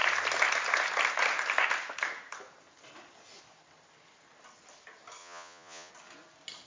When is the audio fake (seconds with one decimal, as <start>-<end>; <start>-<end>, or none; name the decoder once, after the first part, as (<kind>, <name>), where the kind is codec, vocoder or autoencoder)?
5.2-5.9 (vocoder, Vocos)